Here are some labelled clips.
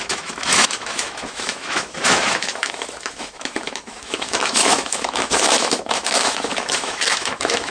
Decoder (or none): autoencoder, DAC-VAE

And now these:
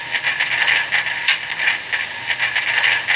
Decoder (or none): none